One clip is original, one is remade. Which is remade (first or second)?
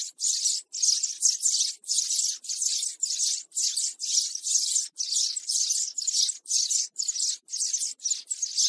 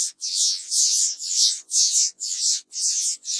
second